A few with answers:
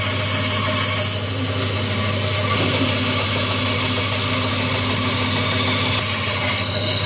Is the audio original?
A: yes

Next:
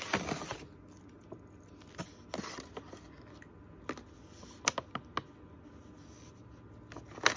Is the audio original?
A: yes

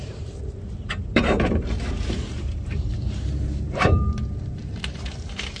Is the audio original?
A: no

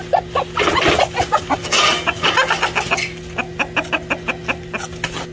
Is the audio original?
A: yes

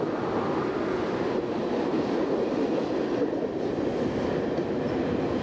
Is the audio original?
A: yes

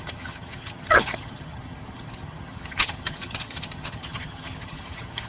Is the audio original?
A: no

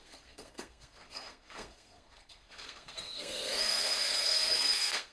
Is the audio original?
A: no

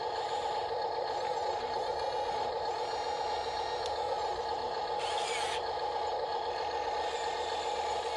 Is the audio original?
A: yes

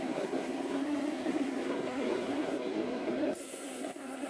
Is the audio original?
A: no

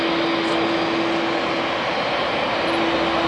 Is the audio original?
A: yes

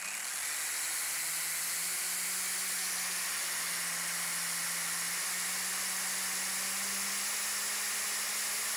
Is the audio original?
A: yes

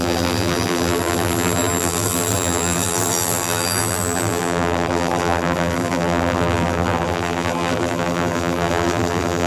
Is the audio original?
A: no